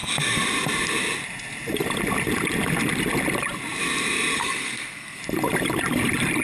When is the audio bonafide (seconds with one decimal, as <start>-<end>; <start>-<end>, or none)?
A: 0.0-4.4; 5.2-6.4